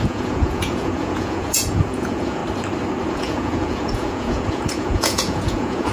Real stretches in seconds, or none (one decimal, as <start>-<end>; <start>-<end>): 2.4-3.1